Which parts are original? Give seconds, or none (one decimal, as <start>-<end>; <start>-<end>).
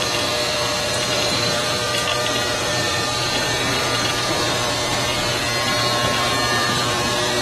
5.1-6.6